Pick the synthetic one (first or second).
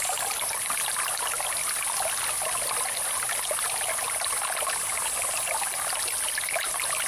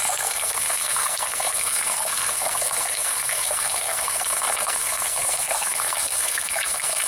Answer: second